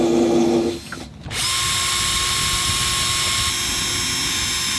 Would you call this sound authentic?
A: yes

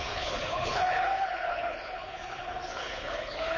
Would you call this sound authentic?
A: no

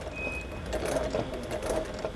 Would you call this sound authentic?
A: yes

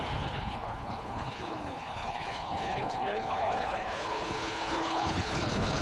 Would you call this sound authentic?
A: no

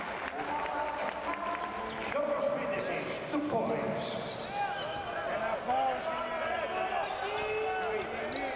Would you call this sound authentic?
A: yes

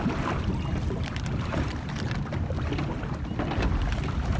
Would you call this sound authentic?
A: yes